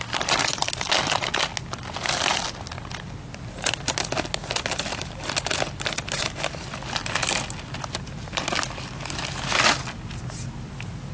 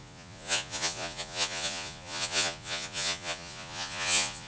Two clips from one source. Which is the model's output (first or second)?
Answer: second